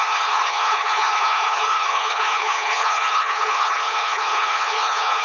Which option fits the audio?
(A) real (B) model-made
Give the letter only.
B